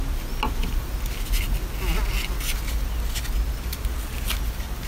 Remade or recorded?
recorded